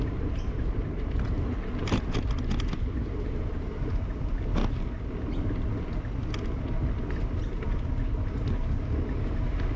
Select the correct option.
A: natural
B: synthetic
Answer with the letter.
A